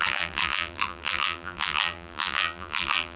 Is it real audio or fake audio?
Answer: fake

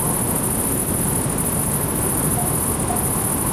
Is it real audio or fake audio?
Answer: real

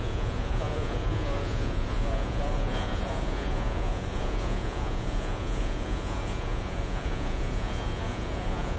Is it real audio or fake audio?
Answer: fake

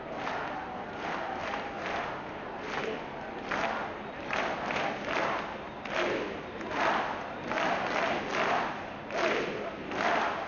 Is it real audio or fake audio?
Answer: real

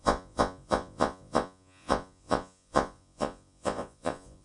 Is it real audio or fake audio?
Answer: fake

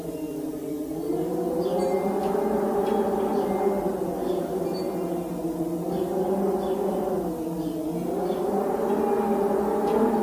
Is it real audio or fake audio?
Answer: real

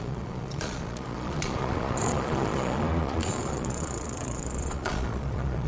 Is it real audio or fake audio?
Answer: fake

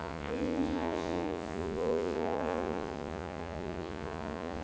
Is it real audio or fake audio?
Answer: fake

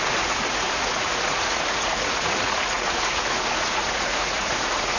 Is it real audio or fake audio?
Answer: fake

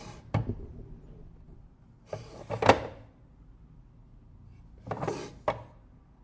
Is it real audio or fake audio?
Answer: real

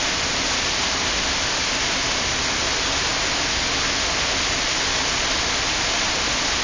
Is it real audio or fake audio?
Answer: real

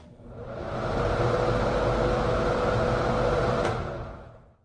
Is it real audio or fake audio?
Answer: real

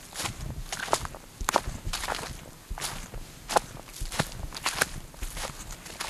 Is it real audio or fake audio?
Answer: real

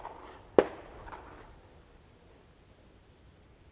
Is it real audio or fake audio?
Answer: real